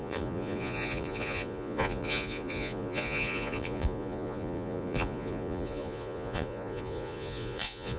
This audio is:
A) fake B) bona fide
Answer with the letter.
A